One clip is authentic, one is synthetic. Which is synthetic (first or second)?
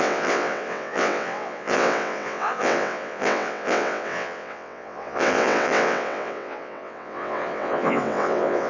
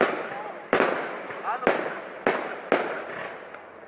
first